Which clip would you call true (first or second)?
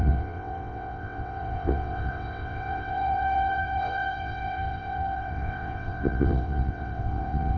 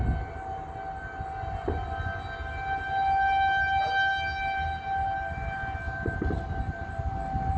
second